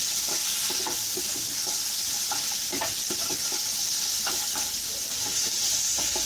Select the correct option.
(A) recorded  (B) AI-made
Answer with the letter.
B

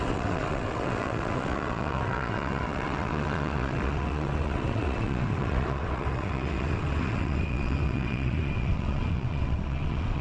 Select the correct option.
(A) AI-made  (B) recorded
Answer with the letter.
A